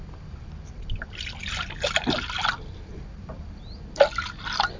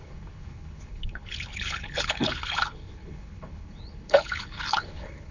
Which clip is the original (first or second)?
first